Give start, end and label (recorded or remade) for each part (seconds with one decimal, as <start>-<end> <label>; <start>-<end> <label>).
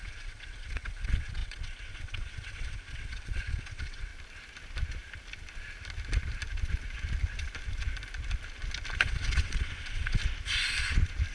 0.0-4.1 remade; 4.1-9.0 recorded; 9.0-10.2 remade; 10.2-11.3 recorded